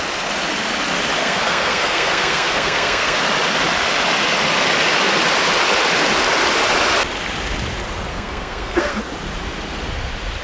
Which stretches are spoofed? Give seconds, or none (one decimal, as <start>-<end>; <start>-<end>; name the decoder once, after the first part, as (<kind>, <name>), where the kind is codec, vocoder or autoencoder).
1.2-3.2 (codec, SNAC); 8.1-9.0